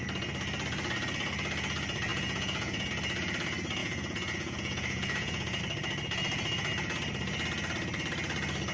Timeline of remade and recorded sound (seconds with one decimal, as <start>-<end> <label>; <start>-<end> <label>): 0.0-2.1 recorded; 2.1-2.9 remade; 2.9-3.8 recorded; 3.8-5.6 remade; 5.6-8.7 recorded